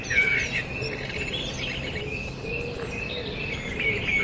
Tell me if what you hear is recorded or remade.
recorded